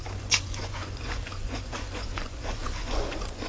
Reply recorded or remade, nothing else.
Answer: remade